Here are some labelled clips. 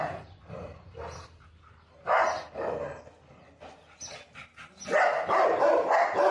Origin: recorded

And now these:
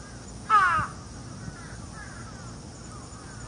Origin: recorded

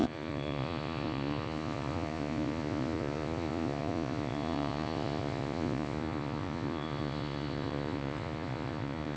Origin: remade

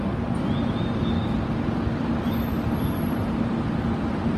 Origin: recorded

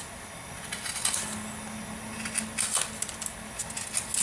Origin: recorded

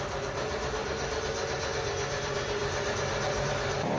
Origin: recorded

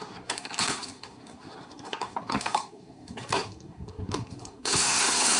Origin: remade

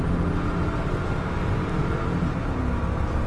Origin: recorded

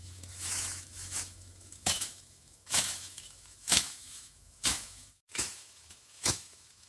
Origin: remade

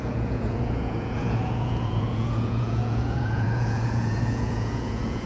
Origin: remade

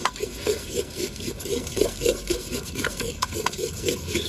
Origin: remade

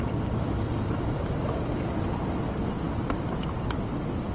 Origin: recorded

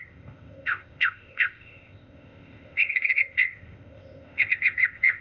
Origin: remade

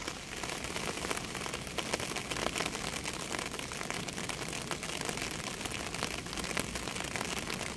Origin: recorded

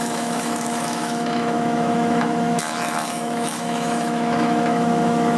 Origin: remade